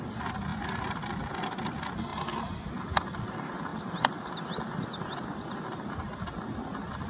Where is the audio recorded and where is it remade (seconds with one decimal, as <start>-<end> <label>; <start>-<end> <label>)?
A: 0.0-2.1 recorded; 2.1-2.7 remade; 2.7-3.7 recorded; 3.7-4.4 remade; 4.4-7.1 recorded